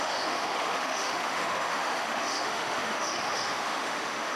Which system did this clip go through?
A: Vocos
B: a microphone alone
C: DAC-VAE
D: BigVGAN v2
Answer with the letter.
C